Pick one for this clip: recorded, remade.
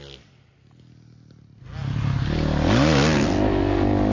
recorded